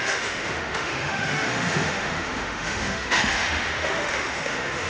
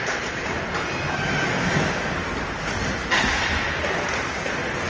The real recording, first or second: second